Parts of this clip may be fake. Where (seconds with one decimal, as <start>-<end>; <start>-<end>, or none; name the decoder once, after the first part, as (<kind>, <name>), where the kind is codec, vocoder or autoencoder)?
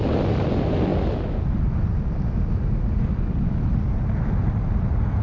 none